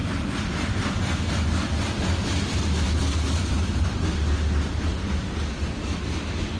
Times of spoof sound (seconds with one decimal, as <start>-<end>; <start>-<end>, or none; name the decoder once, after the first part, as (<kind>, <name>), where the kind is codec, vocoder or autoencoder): 0.0-4.0 (vocoder, BigVGAN v2)